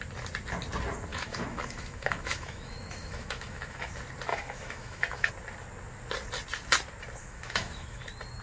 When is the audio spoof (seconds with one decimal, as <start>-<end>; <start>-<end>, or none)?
1.1-3.9; 4.3-5.3; 7.2-8.0